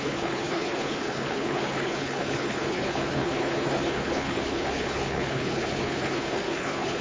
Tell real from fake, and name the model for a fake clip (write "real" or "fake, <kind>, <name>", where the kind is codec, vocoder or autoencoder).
fake, codec, HILCodec